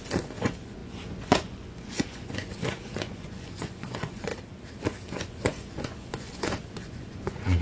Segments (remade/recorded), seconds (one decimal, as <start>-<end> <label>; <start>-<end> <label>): 0.0-4.3 remade; 4.3-5.1 recorded; 5.1-7.6 remade